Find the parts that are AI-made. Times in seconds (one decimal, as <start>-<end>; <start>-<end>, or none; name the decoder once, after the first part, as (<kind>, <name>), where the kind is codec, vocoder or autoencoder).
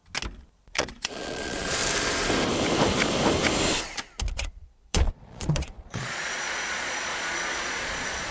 0.5-1.8 (vocoder, Vocos); 4.3-8.3